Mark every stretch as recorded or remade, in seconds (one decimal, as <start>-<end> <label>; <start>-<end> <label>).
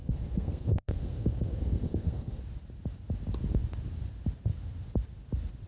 0.0-2.4 remade; 2.4-5.7 recorded